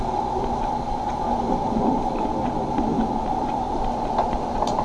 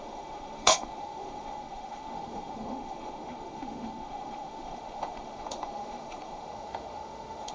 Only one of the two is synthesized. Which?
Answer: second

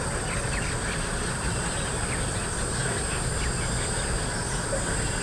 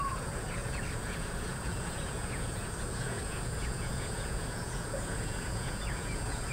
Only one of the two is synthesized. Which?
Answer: second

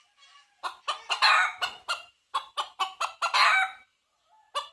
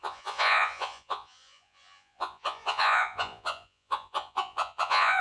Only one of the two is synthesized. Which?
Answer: second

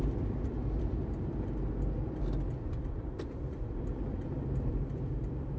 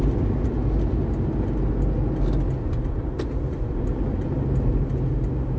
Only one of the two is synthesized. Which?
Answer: first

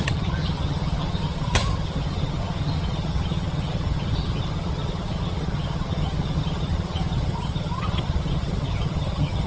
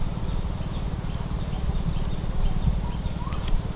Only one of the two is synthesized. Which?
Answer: first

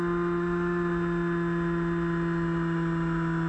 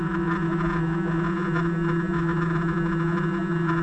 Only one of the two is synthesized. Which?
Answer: second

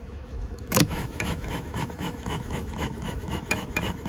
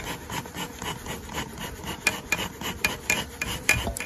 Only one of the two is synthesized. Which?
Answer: first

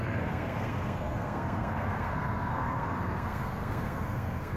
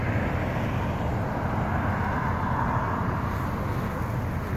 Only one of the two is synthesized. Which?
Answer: first